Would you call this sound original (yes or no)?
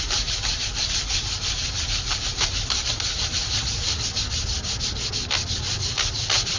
yes